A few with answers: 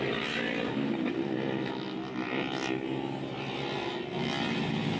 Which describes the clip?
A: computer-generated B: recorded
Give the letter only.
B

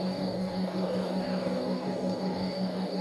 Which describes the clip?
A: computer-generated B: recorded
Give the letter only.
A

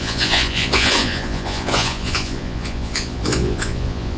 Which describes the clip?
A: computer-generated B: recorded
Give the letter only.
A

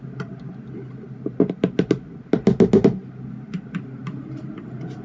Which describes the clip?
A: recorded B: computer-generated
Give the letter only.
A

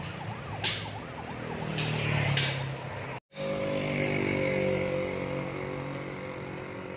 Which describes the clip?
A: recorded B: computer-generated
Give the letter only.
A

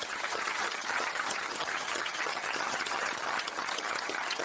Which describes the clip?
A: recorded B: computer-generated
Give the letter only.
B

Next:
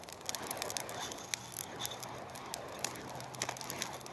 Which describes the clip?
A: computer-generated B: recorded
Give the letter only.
B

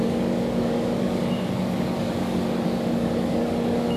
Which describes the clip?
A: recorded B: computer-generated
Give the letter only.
B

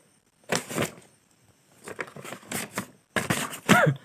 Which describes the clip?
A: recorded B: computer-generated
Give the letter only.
A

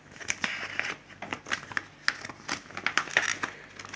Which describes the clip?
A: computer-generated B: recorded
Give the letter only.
B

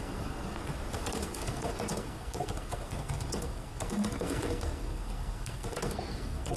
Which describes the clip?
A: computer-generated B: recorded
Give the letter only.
A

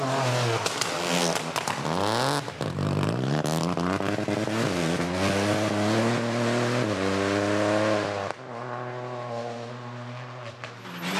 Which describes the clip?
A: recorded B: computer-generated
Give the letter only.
A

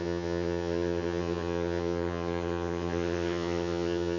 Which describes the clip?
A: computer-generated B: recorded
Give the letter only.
A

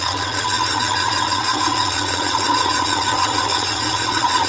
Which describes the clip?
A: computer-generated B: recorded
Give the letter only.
A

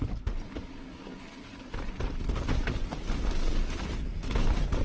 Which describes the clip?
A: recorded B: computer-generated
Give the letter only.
A